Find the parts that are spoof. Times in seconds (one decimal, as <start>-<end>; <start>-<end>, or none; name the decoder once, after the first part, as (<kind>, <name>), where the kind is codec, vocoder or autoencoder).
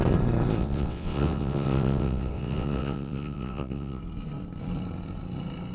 0.6-4.0 (vocoder, WaveNeXt)